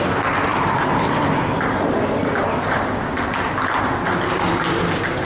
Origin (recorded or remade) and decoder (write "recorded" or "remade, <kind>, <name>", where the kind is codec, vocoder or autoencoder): recorded